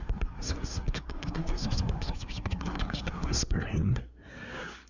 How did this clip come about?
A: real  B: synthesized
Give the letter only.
B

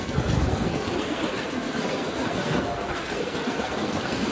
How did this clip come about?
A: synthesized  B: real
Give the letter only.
A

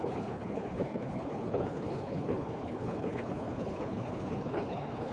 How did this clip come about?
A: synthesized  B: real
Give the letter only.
A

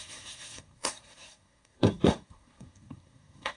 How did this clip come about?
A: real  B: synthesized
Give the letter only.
B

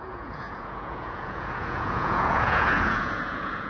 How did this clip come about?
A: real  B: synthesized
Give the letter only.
B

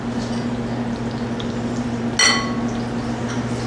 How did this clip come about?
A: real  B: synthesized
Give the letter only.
A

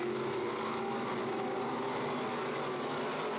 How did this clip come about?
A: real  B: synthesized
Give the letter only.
A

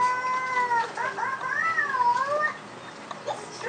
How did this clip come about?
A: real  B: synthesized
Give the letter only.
A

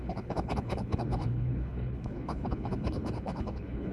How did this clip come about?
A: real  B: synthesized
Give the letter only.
B